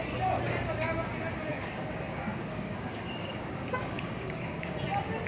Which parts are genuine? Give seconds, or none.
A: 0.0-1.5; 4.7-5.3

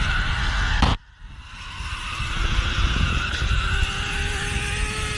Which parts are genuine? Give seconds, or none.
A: 0.0-5.2

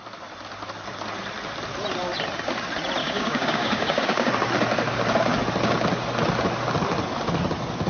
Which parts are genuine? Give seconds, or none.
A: 0.0-3.0; 4.3-7.9

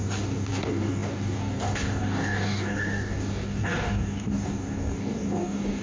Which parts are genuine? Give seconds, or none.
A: none

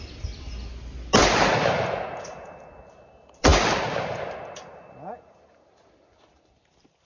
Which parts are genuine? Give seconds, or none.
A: 0.0-7.0

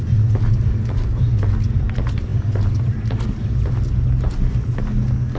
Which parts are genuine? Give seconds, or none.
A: 0.0-5.4